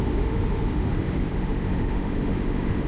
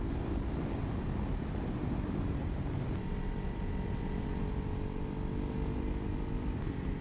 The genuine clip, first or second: second